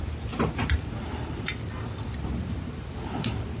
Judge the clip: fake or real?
real